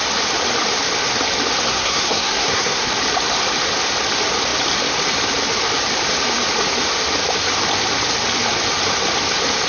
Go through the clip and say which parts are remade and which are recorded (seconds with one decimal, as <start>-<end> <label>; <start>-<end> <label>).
0.0-1.7 recorded; 1.7-2.9 remade; 2.9-9.7 recorded